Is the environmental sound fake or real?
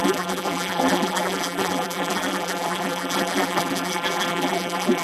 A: fake